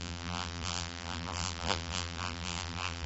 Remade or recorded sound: remade